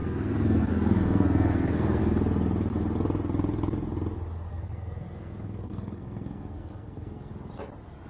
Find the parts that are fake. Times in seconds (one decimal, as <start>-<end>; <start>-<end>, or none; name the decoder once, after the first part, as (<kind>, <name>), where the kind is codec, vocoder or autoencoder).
0.0-2.0 (codec, SNAC); 4.5-7.3

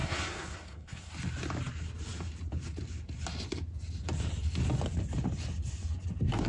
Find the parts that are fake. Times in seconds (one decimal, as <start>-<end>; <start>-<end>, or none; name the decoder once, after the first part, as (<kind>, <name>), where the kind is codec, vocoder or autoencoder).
0.0-1.1 (codec, SNAC)

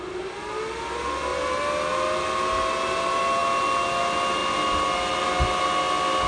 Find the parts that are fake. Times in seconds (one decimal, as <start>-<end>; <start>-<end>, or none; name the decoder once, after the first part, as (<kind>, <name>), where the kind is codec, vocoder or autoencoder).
none

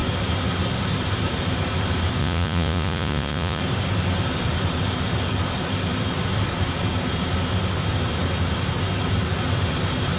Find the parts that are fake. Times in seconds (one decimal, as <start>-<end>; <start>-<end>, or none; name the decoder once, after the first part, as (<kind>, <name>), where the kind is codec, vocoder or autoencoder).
2.2-3.6 (vocoder, Vocos)

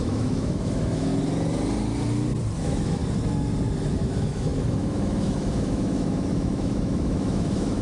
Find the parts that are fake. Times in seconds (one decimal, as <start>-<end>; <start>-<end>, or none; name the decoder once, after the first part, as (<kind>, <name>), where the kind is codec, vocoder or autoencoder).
0.0-1.1 (autoencoder, DAC-VAE); 2.6-3.0; 3.9-7.8

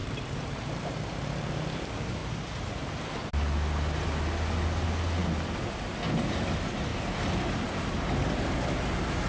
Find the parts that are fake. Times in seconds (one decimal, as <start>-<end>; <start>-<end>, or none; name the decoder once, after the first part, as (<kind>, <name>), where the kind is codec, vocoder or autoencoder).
0.0-0.9 (vocoder, BigVGAN v2); 2.2-2.7; 6.9-8.0